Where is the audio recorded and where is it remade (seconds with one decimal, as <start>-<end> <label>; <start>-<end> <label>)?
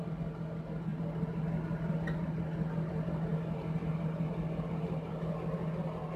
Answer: 0.0-6.2 recorded